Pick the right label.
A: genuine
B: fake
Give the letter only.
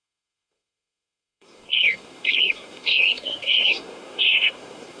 B